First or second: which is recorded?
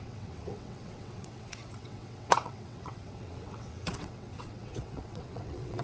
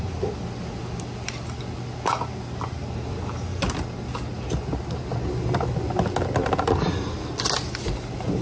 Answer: second